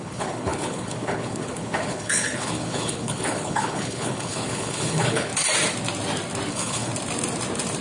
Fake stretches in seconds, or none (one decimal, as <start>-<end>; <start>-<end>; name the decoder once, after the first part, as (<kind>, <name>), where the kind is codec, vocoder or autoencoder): 0.0-5.3 (codec, HILCodec); 6.5-6.9